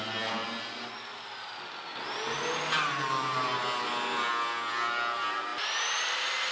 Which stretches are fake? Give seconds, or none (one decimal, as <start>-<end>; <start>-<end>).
none